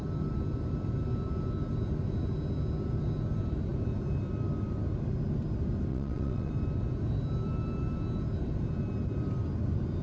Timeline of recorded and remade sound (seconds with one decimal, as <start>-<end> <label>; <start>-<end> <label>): 0.0-5.9 recorded; 5.9-6.5 remade; 6.5-10.0 recorded